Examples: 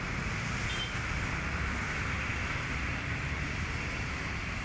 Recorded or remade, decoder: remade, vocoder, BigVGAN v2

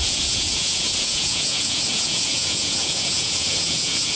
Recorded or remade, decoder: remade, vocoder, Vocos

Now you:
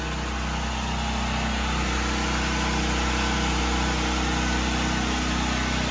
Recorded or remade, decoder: recorded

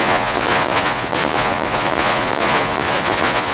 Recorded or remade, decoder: remade, vocoder, Vocos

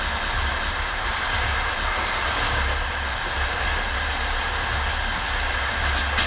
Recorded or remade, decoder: recorded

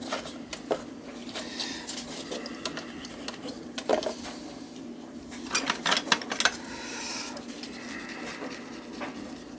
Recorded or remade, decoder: recorded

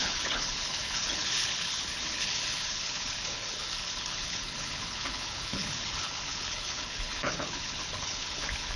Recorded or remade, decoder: remade, codec, HILCodec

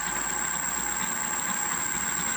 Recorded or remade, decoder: recorded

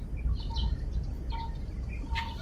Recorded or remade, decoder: recorded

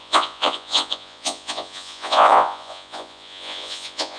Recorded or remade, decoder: remade, vocoder, Vocos